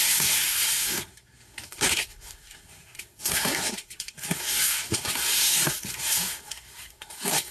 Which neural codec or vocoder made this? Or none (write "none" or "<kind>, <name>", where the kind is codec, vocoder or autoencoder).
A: codec, SNAC